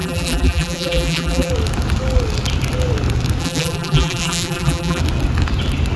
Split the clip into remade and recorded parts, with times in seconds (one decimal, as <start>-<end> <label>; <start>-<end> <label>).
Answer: 0.0-1.5 remade; 1.5-3.4 recorded; 3.4-5.0 remade; 5.0-6.0 recorded